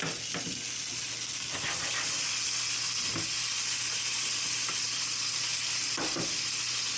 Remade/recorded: recorded